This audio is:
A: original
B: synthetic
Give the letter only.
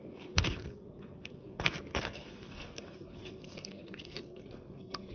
B